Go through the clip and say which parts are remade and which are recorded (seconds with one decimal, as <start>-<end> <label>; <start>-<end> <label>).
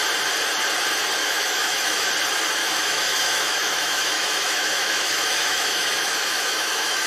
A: 0.0-1.2 recorded; 1.2-2.1 remade; 2.1-2.6 recorded; 2.6-7.1 remade